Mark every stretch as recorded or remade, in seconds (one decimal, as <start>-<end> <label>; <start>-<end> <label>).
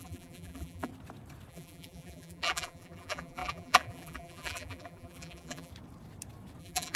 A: 0.0-0.9 remade; 0.9-1.5 recorded; 1.5-5.7 remade; 5.7-6.6 recorded; 6.6-7.0 remade